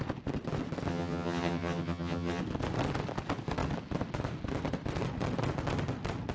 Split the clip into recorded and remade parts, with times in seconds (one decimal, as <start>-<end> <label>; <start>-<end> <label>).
0.0-0.9 recorded; 0.9-2.4 remade; 2.4-6.3 recorded